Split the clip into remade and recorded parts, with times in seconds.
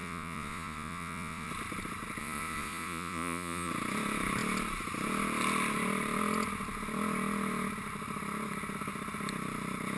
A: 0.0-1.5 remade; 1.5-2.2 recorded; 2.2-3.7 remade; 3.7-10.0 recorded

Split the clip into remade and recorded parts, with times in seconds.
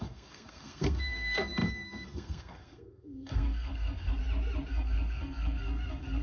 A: 0.0-4.2 remade; 4.2-4.7 recorded; 4.7-6.2 remade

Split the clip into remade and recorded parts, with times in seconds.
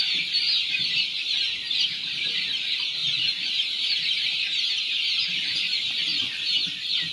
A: 0.0-3.0 remade; 3.0-4.7 recorded; 4.7-6.1 remade; 6.1-7.1 recorded